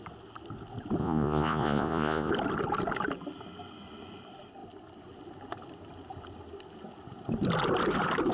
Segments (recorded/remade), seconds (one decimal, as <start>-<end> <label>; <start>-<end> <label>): 0.0-1.0 recorded; 1.0-2.3 remade; 2.3-8.3 recorded